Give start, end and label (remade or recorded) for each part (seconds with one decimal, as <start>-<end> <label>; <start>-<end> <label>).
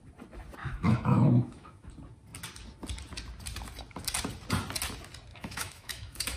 0.0-0.6 recorded; 0.6-1.9 remade; 1.9-5.3 recorded; 5.3-6.4 remade